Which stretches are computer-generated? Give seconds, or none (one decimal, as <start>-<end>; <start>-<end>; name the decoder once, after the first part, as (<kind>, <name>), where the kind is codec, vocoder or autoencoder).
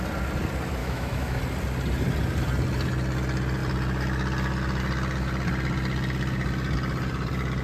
0.8-1.4 (autoencoder, DAC-VAE)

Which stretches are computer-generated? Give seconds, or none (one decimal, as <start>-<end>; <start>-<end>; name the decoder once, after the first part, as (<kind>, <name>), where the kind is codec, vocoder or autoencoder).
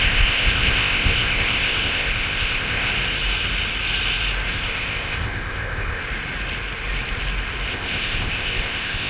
0.0-2.9 (codec, ZipCodec); 4.5-6.0; 7.7-9.1